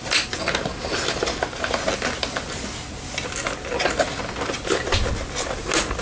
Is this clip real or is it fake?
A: real